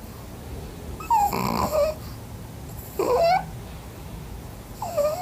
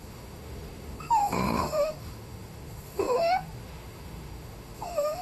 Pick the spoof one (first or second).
second